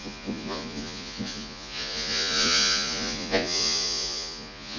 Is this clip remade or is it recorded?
remade